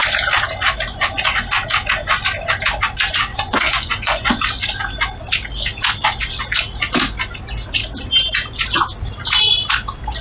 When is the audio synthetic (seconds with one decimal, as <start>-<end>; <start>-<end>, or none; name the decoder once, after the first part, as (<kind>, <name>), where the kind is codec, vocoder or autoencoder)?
3.3-4.4 (vocoder, Vocos)